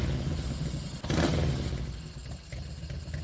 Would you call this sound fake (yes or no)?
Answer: no